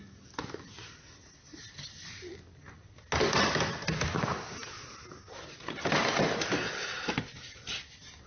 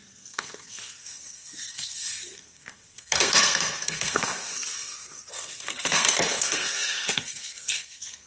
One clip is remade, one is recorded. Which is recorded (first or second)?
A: first